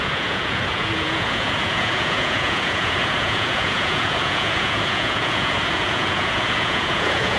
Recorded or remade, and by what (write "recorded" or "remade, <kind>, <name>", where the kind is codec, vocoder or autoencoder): remade, vocoder, Vocos